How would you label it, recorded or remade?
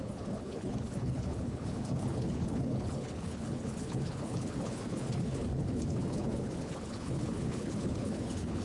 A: remade